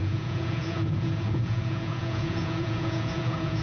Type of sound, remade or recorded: remade